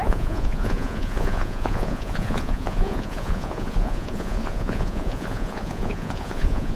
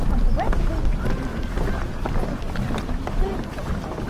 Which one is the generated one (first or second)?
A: first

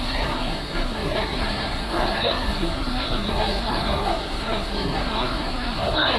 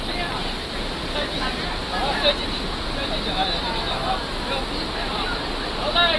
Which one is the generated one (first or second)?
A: first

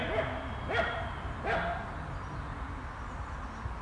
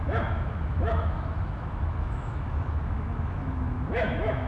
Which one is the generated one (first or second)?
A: second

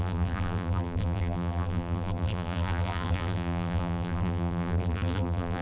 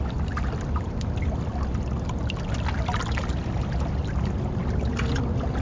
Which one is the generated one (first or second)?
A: first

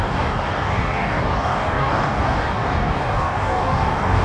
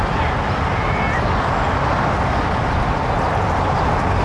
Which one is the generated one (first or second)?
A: first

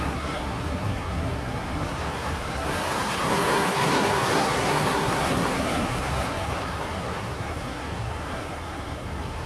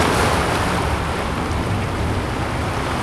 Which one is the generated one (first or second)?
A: first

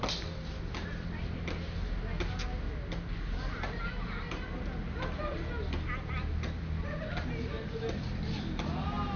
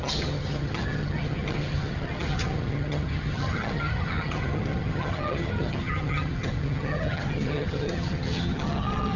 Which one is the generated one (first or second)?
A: second